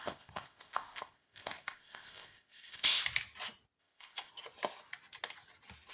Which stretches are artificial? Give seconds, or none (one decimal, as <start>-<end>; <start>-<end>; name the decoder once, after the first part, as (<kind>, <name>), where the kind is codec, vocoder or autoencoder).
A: 0.0-3.0 (codec, ZipCodec); 3.8-4.3